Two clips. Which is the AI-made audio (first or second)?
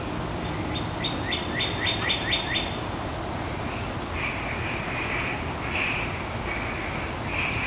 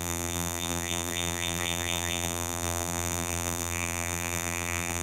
second